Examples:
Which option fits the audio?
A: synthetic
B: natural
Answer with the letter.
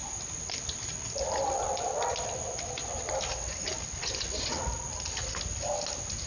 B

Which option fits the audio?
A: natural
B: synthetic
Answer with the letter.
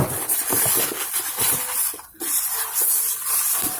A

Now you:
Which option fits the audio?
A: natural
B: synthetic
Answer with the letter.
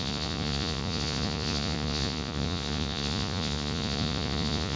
B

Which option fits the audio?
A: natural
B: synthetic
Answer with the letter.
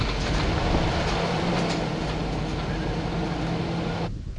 A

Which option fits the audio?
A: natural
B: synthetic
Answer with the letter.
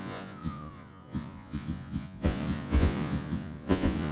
B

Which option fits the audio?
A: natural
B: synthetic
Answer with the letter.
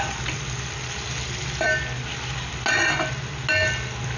A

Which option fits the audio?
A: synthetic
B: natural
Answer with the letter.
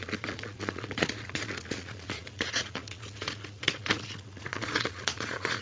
A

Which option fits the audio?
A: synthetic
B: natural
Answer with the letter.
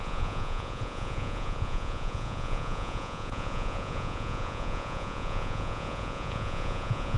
A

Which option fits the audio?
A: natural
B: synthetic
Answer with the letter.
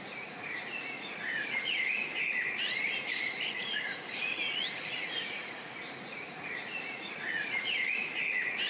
B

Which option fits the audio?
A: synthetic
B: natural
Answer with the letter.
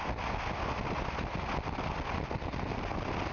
B